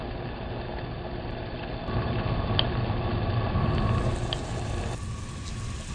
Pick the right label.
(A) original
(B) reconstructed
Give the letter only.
A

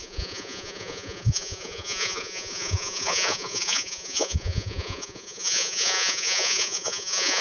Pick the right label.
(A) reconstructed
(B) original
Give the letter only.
A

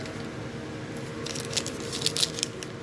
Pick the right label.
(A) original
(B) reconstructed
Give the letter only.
A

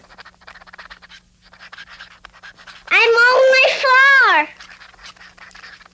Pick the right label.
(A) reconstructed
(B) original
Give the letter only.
B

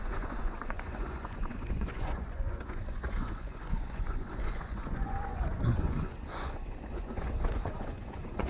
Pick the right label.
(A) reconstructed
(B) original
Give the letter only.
A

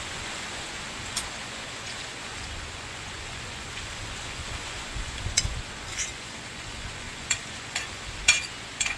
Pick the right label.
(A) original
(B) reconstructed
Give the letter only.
B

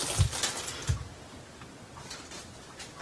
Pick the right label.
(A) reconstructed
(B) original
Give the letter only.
B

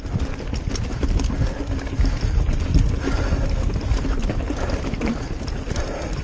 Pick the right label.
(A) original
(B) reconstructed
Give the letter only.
A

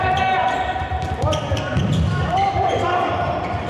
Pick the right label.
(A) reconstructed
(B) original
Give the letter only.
B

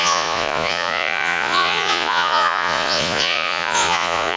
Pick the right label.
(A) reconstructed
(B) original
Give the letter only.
A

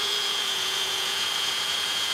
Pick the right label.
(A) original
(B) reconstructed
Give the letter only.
B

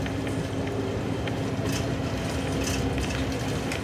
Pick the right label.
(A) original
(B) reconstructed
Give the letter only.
A